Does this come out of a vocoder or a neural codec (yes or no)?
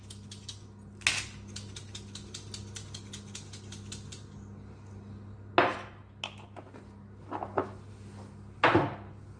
no